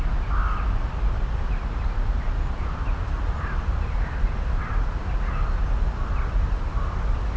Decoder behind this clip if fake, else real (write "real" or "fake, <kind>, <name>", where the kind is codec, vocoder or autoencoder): real